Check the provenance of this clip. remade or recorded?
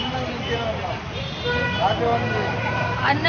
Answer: recorded